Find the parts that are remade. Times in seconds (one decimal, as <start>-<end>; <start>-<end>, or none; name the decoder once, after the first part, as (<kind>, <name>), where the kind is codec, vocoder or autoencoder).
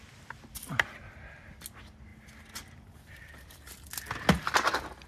none